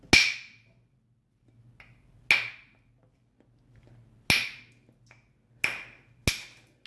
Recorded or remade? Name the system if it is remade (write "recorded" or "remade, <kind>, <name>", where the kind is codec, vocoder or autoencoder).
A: recorded